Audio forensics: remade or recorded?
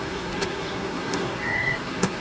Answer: remade